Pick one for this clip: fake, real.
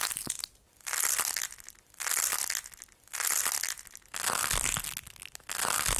real